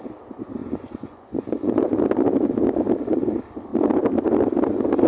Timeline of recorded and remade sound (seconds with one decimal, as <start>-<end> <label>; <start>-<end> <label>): 0.0-0.6 recorded; 0.6-1.8 remade; 1.8-5.1 recorded